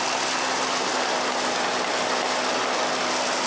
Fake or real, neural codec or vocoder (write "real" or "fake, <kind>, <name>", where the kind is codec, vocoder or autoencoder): real